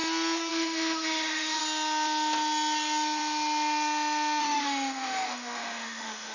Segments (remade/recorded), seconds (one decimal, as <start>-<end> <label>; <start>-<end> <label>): 0.0-0.5 recorded; 0.5-1.6 remade; 1.6-4.4 recorded; 4.4-6.3 remade